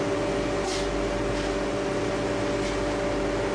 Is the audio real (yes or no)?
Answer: yes